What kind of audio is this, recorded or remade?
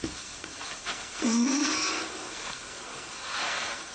remade